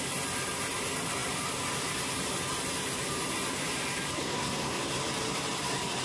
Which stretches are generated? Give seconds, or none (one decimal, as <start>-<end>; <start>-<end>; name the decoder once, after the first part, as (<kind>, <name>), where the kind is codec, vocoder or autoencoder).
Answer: 4.2-4.8 (codec, SNAC)